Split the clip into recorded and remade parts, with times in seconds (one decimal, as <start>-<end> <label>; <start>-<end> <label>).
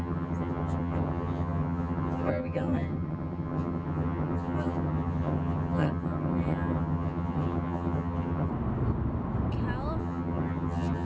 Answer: 0.0-8.5 remade; 8.5-10.0 recorded; 10.0-11.0 remade